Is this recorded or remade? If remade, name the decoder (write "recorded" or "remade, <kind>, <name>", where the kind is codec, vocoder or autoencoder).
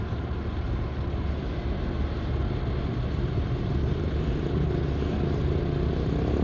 recorded